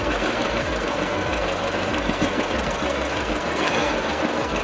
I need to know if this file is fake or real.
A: fake